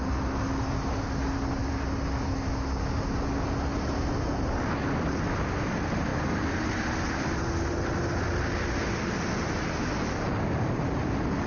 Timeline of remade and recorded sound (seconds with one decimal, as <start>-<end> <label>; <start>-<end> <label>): 0.0-11.5 recorded